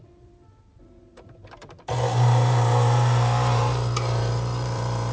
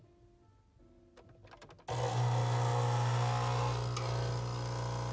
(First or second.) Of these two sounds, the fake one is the first